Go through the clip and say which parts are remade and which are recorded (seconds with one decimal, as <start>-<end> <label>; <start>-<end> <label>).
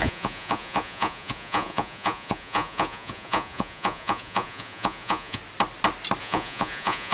0.0-5.4 remade; 5.4-6.2 recorded; 6.2-7.1 remade